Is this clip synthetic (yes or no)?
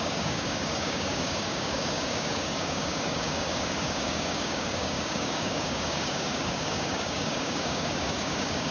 yes